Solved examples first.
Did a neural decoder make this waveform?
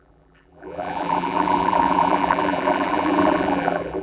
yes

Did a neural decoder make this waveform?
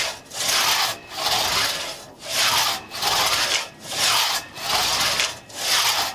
no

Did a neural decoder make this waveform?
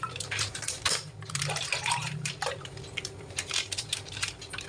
yes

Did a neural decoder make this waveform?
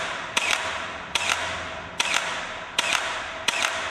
yes